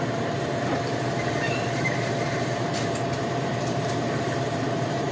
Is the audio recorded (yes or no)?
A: no